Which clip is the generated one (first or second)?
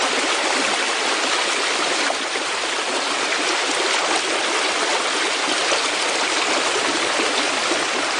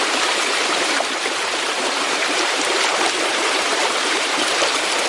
second